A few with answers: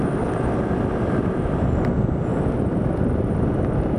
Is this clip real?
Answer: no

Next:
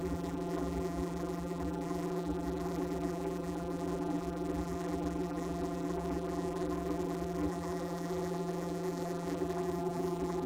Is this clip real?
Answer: no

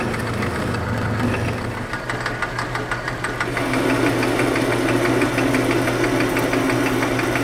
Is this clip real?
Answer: no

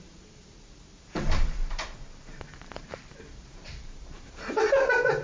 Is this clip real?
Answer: no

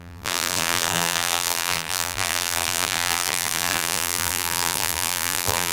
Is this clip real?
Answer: no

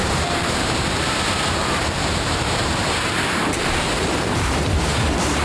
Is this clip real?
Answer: no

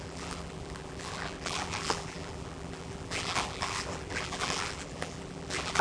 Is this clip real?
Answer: no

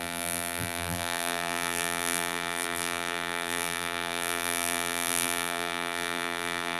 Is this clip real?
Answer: no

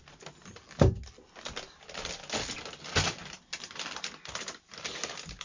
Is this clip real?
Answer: yes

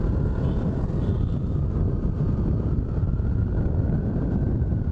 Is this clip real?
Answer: no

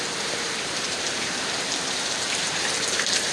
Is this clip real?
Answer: no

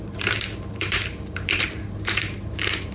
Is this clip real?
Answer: no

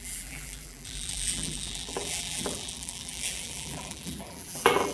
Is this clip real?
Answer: no